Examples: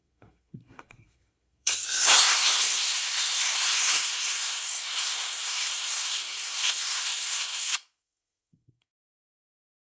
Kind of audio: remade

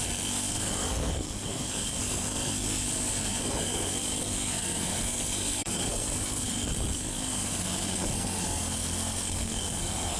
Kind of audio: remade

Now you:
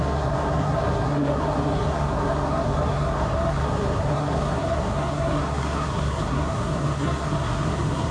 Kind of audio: remade